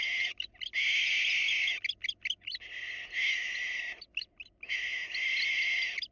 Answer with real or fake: real